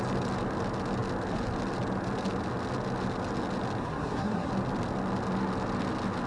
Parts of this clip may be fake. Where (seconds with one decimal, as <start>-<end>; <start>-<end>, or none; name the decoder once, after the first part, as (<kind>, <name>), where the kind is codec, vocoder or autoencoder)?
3.8-4.5 (codec, SNAC)